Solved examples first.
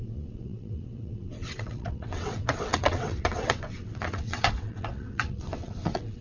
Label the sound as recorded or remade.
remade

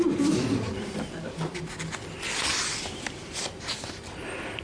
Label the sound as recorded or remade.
recorded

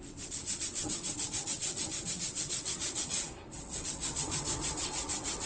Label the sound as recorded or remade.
remade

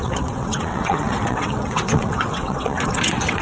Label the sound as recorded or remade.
remade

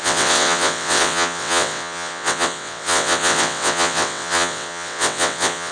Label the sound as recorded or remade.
remade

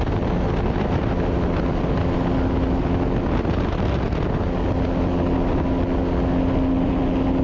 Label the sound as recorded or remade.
recorded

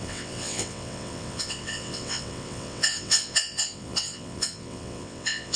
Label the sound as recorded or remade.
remade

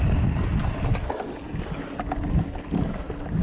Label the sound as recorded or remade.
recorded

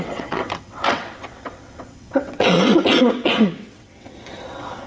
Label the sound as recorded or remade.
remade